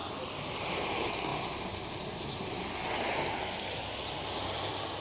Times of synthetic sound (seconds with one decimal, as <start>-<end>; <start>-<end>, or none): none